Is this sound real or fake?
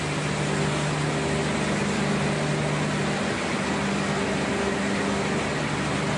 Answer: real